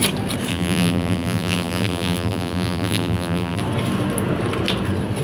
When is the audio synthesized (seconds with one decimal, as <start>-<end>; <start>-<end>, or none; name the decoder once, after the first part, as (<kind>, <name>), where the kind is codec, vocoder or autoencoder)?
0.5-3.6 (vocoder, BigVGAN v2)